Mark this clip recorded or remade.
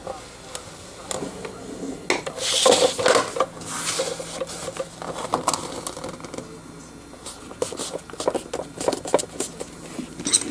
recorded